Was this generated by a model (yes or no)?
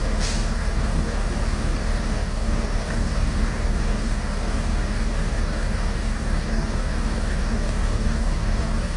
yes